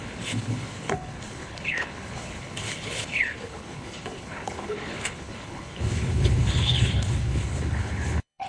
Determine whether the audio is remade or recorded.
remade